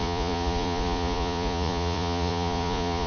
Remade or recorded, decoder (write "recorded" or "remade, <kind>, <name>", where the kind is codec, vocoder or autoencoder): remade, vocoder, Vocos